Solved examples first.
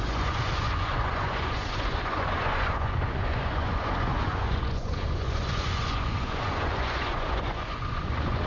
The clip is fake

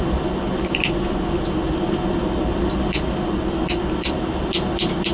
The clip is real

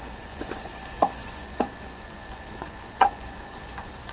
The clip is fake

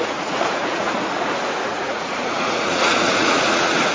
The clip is fake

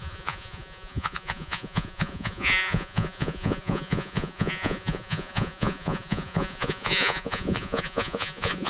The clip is fake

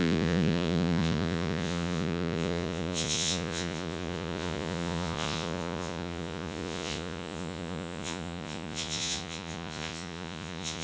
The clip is fake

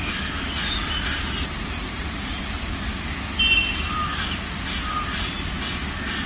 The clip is real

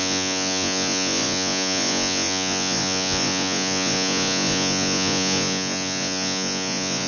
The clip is fake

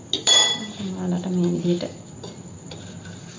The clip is real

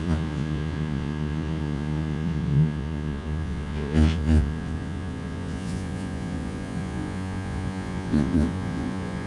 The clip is fake